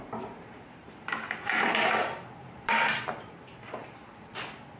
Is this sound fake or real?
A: fake